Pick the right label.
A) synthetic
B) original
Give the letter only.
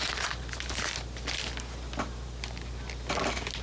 B